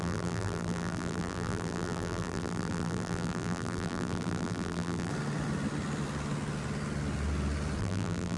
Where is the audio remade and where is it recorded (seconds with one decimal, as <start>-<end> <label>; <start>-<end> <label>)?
0.0-5.1 remade; 5.1-7.8 recorded; 7.8-8.4 remade